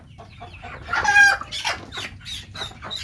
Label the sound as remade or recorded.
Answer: recorded